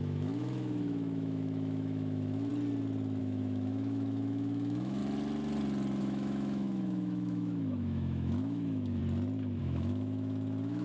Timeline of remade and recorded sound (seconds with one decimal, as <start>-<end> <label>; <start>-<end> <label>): 0.0-2.5 remade; 2.5-3.2 recorded; 3.2-5.0 remade; 5.0-6.0 recorded; 6.0-9.0 remade; 9.0-9.6 recorded; 9.6-10.8 remade